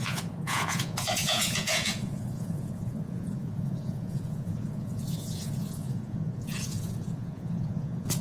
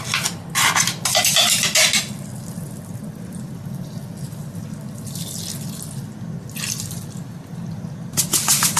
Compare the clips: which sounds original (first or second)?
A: second